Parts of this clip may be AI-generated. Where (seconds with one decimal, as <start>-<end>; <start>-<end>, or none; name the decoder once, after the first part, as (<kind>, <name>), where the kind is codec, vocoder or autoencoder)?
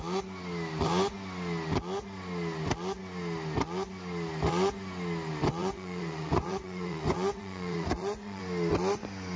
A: 5.6-8.4 (vocoder, Vocos)